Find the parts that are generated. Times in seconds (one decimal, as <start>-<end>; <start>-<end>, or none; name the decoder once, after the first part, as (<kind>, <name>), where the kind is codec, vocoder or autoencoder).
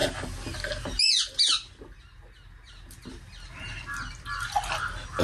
none